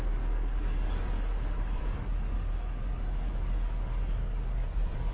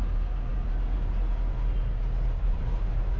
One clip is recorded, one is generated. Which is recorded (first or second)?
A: second